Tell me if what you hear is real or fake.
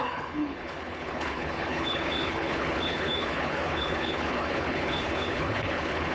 fake